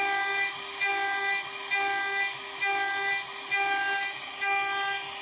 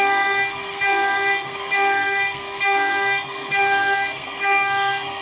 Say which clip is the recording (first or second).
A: first